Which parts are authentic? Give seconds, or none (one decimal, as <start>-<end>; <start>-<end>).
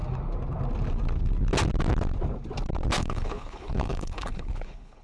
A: 0.0-3.0